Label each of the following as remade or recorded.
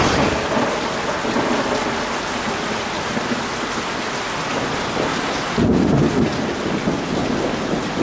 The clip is recorded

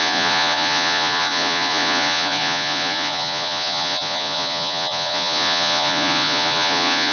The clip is remade